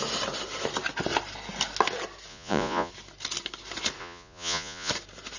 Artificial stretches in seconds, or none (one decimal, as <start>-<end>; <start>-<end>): 2.3-2.9; 4.0-4.9